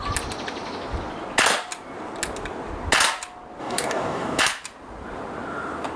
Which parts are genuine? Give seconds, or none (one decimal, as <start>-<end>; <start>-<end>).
0.0-3.6; 4.4-6.0